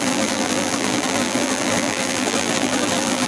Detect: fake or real fake